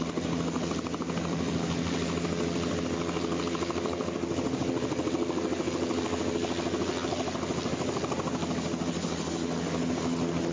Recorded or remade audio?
recorded